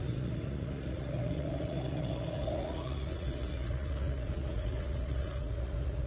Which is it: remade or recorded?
remade